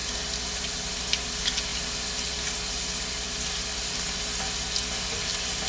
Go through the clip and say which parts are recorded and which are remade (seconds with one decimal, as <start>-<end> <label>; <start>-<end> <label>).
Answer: 0.0-5.7 recorded